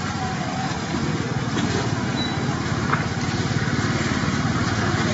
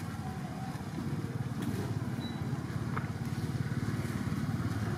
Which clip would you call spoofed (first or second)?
first